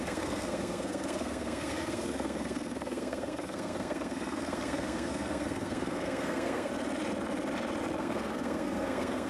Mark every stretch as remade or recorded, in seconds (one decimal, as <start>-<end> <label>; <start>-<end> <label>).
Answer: 0.0-6.7 remade; 6.7-8.0 recorded; 8.0-9.3 remade